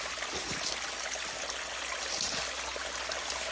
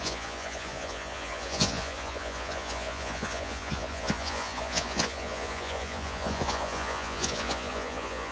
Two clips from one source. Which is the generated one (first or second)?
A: second